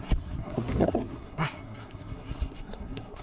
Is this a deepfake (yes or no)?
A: yes